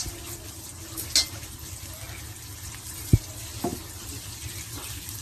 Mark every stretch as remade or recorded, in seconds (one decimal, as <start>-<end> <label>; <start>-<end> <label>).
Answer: 0.0-5.2 recorded